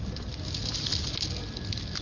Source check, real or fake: real